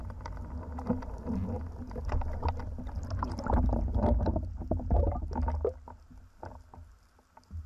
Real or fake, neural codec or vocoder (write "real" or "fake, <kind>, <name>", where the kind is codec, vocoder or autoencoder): real